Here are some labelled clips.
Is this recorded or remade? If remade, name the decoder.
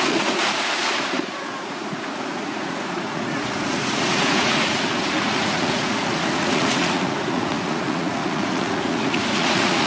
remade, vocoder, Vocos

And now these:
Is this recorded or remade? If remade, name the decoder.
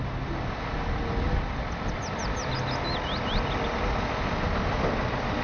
recorded